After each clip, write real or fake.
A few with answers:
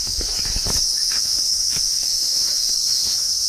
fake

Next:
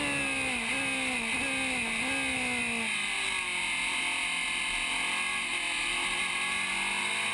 real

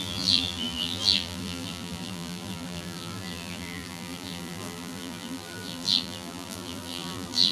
fake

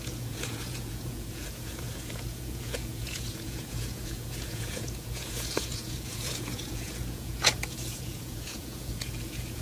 fake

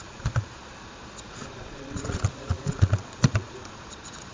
fake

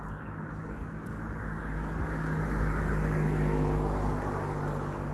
fake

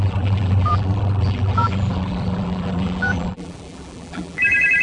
fake